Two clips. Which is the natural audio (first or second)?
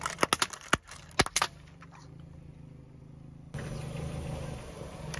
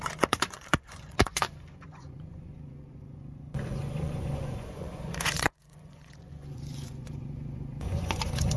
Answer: first